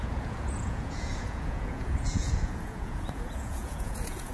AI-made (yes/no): yes